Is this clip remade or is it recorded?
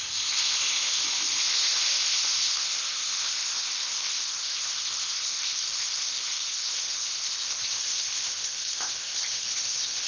remade